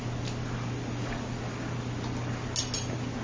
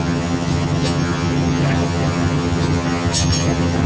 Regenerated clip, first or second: second